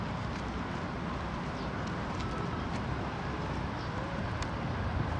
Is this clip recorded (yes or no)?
yes